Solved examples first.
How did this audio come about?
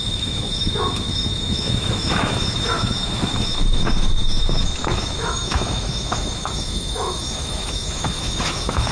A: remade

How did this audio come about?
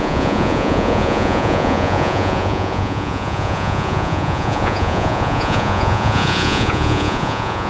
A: remade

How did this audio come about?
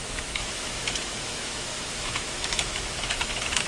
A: remade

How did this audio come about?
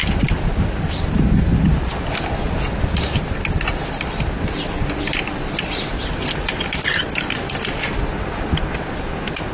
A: recorded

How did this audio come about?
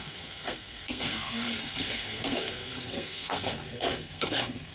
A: remade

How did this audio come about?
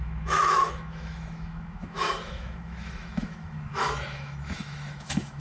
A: remade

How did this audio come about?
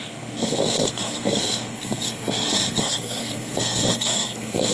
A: remade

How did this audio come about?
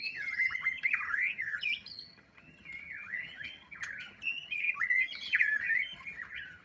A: remade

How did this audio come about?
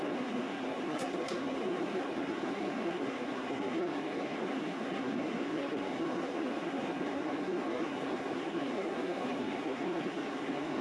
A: remade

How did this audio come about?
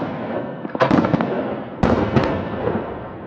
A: remade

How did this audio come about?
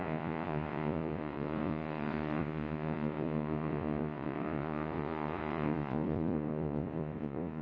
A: remade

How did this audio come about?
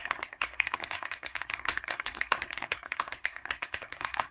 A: remade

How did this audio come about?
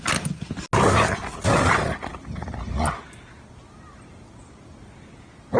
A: recorded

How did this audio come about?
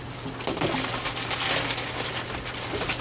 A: recorded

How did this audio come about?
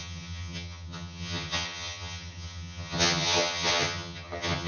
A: remade